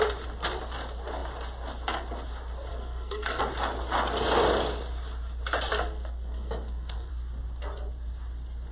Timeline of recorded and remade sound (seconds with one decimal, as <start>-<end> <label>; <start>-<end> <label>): 0.0-2.7 recorded; 2.7-3.4 remade; 3.4-5.7 recorded; 5.7-7.1 remade; 7.1-8.7 recorded